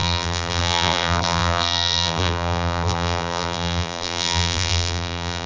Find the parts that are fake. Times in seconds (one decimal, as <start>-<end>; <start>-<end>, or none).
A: 0.0-5.5